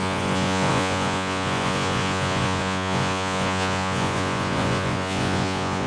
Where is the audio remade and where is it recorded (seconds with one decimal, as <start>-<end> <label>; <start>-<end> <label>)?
0.0-5.9 remade